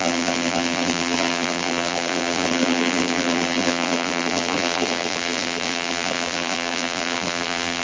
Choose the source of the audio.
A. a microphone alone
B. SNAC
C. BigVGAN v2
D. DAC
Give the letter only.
C